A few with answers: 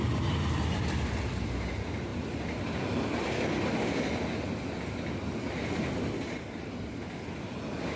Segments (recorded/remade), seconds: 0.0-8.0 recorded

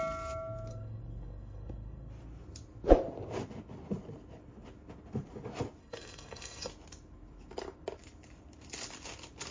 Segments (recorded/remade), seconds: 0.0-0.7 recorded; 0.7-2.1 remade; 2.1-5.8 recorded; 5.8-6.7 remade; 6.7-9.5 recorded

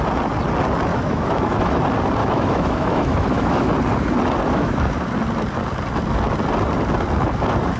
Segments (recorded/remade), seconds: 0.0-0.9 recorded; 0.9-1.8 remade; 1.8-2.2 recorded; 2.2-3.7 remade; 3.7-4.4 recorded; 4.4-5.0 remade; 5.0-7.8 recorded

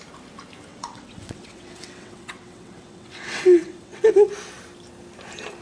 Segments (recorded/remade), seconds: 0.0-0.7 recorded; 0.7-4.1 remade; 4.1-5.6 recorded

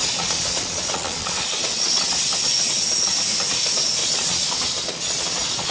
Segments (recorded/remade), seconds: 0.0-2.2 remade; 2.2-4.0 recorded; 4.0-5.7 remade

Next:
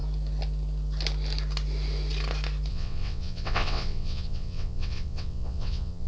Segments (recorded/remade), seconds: 0.0-2.7 recorded; 2.7-6.1 remade